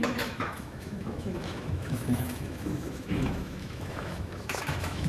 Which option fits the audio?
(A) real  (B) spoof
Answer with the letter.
B